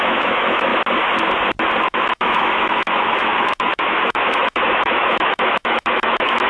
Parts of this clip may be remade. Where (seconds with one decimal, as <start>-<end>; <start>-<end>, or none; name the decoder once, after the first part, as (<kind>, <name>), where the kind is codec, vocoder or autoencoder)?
0.0-0.7 (autoencoder, DAC-VAE); 1.8-6.5